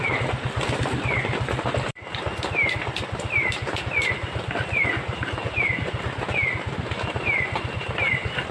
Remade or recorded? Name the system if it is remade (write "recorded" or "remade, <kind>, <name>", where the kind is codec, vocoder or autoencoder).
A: remade, vocoder, BigVGAN v2